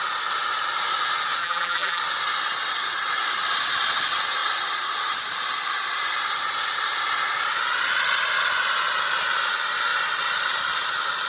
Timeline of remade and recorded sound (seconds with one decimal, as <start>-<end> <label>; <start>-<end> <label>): 0.0-1.4 recorded; 1.4-2.0 remade; 2.0-11.3 recorded